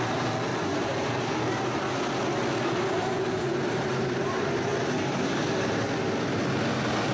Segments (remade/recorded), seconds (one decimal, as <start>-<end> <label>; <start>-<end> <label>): 0.0-0.5 recorded; 0.5-1.7 remade; 1.7-3.0 recorded; 3.0-5.7 remade; 5.7-7.1 recorded